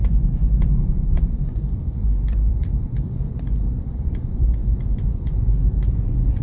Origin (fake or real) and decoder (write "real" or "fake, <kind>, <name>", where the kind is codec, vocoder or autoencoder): fake, vocoder, Vocos